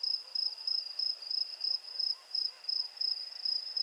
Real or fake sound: real